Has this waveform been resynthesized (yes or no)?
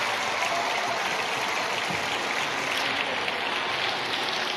no